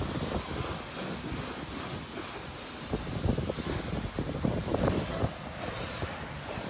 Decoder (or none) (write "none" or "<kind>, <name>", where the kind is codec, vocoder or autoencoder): none